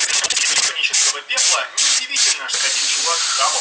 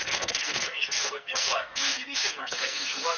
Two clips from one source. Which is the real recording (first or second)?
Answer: first